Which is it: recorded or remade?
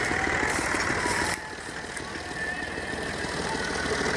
recorded